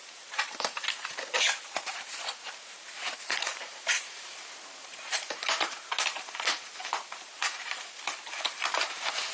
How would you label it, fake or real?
fake